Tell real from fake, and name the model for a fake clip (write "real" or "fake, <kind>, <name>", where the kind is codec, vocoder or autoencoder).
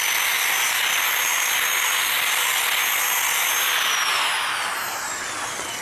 real